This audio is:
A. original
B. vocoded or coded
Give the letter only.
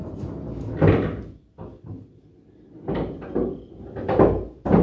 A